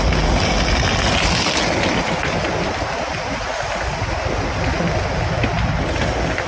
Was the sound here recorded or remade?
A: recorded